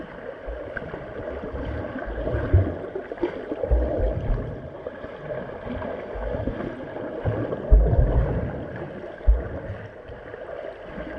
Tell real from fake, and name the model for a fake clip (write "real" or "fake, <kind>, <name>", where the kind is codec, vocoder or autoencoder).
real